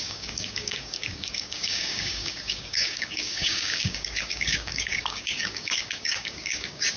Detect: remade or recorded remade